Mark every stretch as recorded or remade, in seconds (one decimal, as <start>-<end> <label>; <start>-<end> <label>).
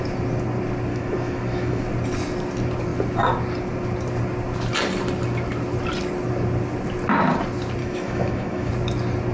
0.0-0.9 recorded; 0.9-1.8 remade; 1.8-7.8 recorded; 7.8-8.7 remade; 8.7-9.3 recorded